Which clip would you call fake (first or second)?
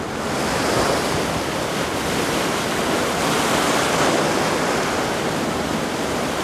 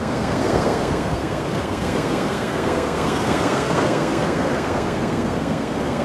second